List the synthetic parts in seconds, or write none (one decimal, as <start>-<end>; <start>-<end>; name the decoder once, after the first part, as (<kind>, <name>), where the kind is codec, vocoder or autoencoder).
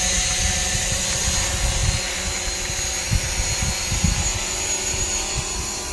none